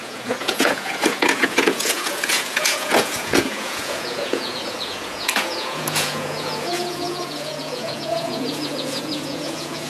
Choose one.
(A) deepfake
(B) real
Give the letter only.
A